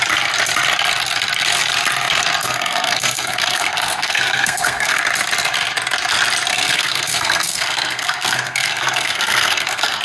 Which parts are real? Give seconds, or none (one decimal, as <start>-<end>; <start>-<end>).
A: 0.0-2.4; 5.0-6.5